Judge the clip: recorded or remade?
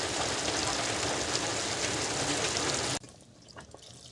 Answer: recorded